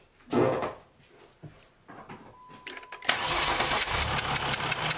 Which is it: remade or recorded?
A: recorded